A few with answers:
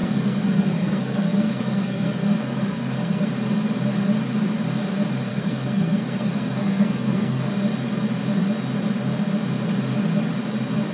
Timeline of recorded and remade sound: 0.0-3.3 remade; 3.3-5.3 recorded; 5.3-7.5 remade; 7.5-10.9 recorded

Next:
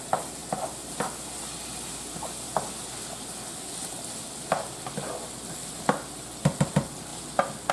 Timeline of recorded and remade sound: 0.0-7.7 recorded

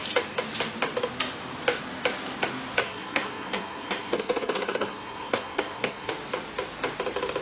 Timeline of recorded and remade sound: 0.0-2.8 recorded; 2.8-6.1 remade; 6.1-7.4 recorded

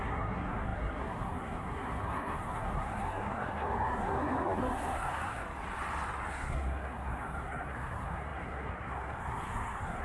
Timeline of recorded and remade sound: 0.0-5.4 remade; 5.4-6.3 recorded; 6.3-10.0 remade

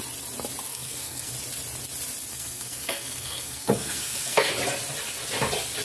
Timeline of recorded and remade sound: 0.0-0.7 recorded; 0.7-1.3 remade; 1.3-2.3 recorded; 2.3-4.5 remade; 4.5-5.8 recorded

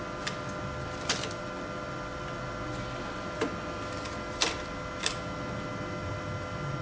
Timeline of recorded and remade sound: 0.0-6.8 recorded

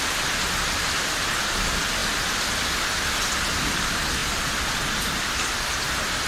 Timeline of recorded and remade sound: 0.0-6.3 recorded